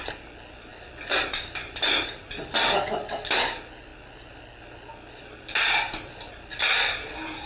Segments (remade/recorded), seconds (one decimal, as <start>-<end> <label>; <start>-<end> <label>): 0.0-7.5 recorded